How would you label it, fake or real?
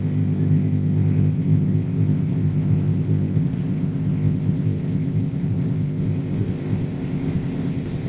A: fake